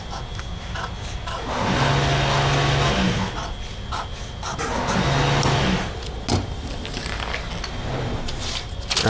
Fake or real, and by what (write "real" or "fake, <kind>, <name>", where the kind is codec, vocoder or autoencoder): real